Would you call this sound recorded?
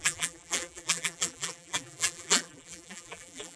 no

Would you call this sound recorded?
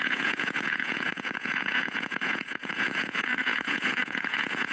no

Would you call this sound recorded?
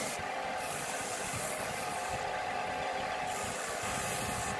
yes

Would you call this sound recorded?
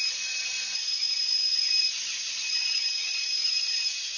no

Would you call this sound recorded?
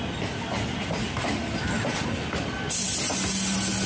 yes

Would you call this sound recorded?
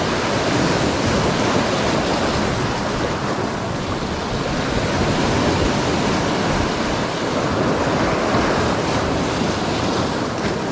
yes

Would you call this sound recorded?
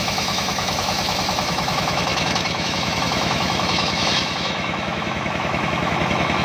no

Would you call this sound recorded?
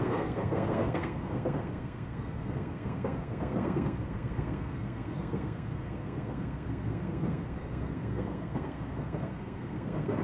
no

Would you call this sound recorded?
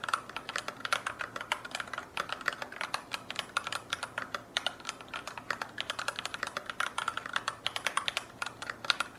yes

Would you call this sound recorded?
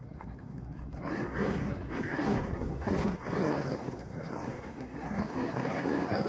no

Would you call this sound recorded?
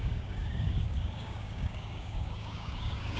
no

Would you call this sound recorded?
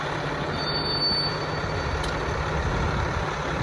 yes